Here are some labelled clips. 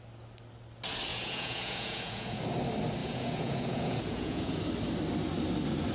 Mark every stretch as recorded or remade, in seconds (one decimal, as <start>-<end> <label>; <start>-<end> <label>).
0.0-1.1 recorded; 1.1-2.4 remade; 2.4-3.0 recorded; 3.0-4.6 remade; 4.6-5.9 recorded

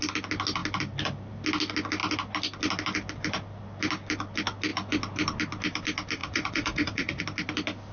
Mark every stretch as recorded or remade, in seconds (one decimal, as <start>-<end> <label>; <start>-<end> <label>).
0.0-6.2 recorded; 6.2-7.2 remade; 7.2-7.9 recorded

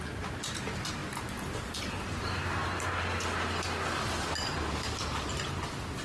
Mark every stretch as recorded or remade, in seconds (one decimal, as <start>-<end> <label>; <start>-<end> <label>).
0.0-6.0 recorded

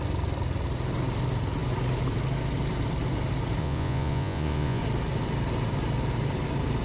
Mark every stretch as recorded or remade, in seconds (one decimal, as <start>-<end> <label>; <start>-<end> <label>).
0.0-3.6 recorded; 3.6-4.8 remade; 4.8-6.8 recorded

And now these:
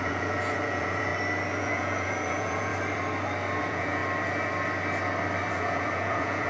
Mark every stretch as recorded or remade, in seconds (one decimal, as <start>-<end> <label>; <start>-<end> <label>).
0.0-1.1 remade; 1.1-1.6 recorded; 1.6-2.7 remade; 2.7-3.6 recorded; 3.6-4.0 remade; 4.0-5.5 recorded; 5.5-6.5 remade